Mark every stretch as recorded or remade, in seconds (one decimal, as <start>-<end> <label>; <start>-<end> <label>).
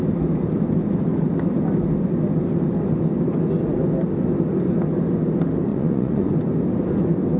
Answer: 0.0-5.7 recorded; 5.7-6.3 remade; 6.3-7.4 recorded